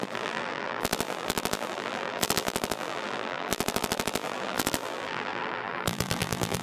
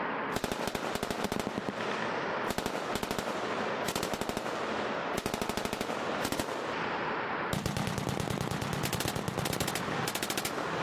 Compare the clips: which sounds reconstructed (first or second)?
first